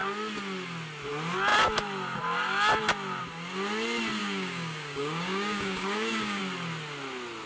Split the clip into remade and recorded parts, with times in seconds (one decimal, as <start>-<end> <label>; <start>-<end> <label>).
0.0-4.2 recorded; 4.2-6.4 remade; 6.4-7.5 recorded